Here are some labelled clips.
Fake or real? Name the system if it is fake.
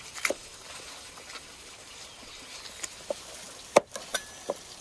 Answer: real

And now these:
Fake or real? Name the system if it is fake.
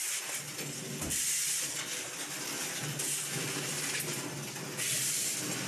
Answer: real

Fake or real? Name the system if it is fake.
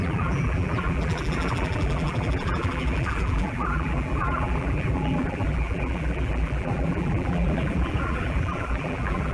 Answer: fake, vocoder, BigVGAN v2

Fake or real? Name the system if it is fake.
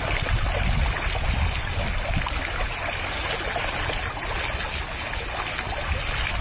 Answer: real